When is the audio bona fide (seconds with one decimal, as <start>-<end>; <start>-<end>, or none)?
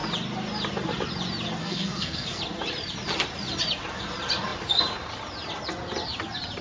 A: 0.0-1.6; 2.4-6.6